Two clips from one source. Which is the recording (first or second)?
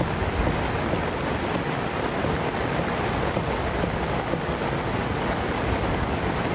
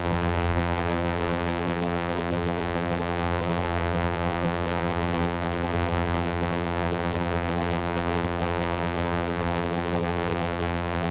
first